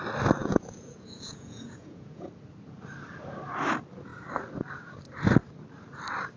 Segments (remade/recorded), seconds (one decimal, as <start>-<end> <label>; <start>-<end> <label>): 0.0-0.4 recorded; 0.4-2.2 remade; 2.2-6.4 recorded